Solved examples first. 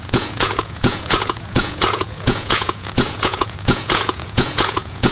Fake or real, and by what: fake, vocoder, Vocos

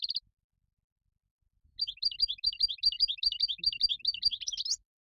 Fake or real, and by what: real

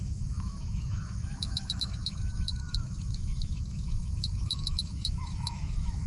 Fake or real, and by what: fake, autoencoder, DAC-VAE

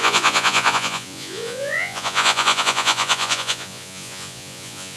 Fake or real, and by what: fake, vocoder, Vocos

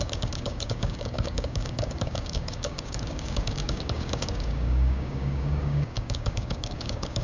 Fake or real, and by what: fake, codec, DAC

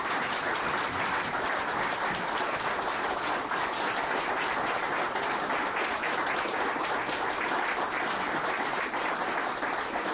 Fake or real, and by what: real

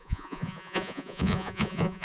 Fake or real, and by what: fake, vocoder, Vocos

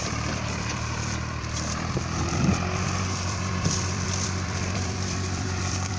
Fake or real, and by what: fake, vocoder, BigVGAN v2